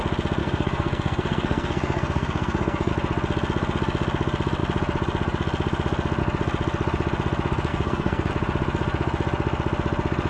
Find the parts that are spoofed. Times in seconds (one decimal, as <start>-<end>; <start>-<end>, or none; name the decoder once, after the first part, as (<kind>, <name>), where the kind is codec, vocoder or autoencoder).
0.4-2.9 (codec, SNAC); 7.7-8.3